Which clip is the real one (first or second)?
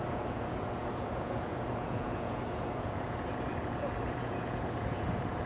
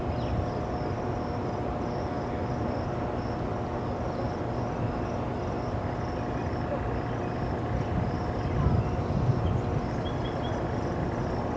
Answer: second